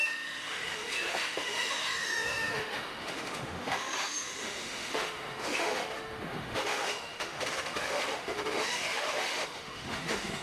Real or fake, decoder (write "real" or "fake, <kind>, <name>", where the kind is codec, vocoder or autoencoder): fake, autoencoder, DAC-VAE